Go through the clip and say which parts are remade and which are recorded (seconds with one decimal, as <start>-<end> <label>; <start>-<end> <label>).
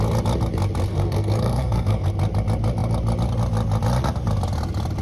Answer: 0.0-0.9 recorded; 0.9-2.1 remade; 2.1-5.0 recorded